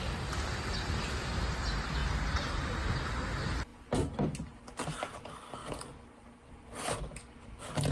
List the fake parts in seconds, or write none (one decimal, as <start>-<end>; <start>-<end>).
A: none